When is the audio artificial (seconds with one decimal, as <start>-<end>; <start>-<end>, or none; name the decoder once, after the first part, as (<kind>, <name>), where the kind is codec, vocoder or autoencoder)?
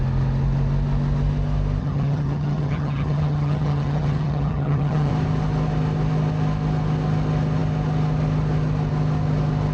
1.8-5.1 (vocoder, HiFi-GAN)